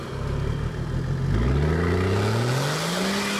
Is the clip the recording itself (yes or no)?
yes